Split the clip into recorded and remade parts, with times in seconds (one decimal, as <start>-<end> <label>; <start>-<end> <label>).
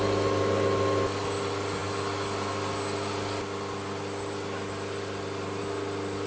0.0-6.3 recorded